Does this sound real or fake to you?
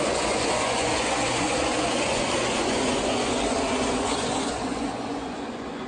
fake